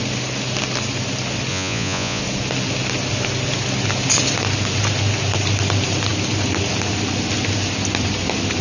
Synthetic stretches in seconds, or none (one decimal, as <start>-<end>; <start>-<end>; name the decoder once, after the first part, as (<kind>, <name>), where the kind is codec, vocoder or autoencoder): 1.5-2.2 (vocoder, Vocos)